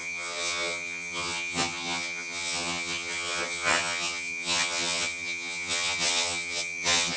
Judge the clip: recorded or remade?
remade